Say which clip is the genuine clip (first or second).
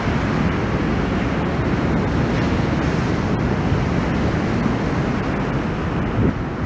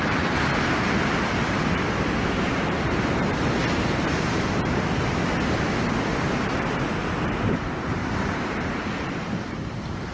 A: first